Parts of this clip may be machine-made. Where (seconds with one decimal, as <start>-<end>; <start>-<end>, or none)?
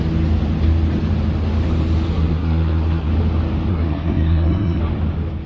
2.1-3.1; 3.7-4.8